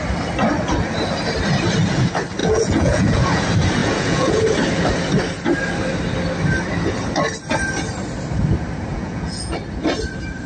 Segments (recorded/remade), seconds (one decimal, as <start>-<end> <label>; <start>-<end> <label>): 0.0-2.4 recorded; 2.4-3.4 remade; 3.4-3.8 recorded; 3.8-4.4 remade; 4.4-8.9 recorded; 8.9-9.5 remade; 9.5-10.5 recorded